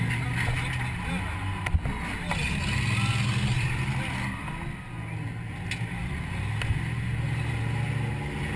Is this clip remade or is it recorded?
recorded